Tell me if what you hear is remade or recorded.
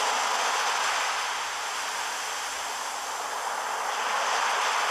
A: recorded